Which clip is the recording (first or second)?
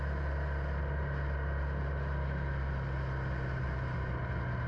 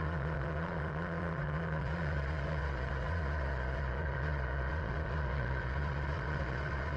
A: first